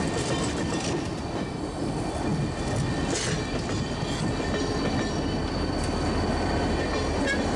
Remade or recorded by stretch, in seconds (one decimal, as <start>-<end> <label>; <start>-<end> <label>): 0.0-7.6 recorded

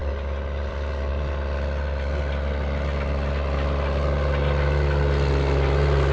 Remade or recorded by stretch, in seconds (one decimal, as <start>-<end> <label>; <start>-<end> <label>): 0.0-6.1 recorded

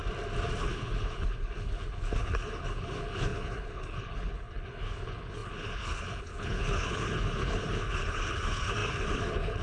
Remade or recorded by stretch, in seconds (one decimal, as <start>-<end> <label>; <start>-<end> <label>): 0.0-0.6 recorded; 0.6-9.6 remade

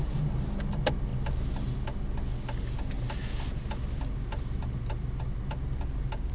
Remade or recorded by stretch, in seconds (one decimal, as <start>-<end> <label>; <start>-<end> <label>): 0.0-6.3 recorded

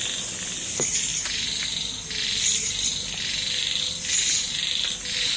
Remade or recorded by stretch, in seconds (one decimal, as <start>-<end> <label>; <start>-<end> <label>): 0.0-5.4 recorded